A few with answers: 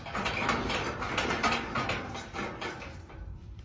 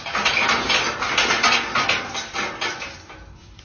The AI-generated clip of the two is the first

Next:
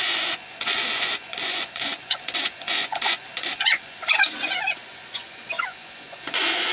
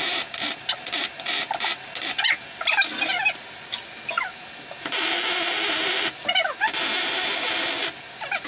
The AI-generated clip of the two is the first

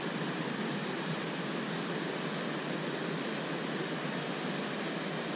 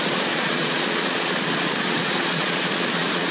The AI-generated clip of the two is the second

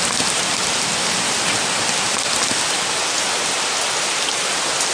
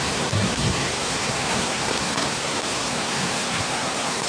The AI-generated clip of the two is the second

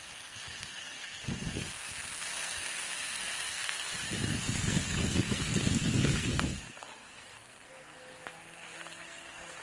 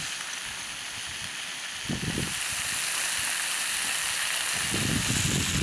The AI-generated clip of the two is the first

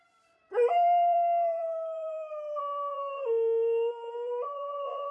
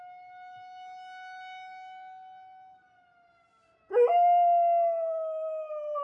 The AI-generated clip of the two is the first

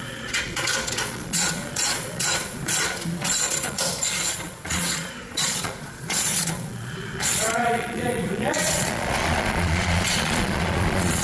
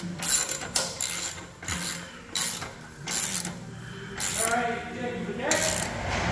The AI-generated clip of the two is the first